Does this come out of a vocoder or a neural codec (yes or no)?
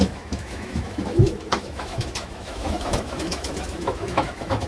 yes